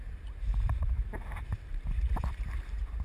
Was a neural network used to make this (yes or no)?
yes